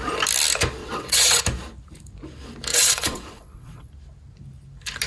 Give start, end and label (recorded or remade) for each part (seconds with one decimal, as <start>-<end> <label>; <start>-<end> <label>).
0.0-0.8 recorded; 0.8-1.4 remade; 1.4-2.7 recorded; 2.7-3.9 remade; 3.9-5.1 recorded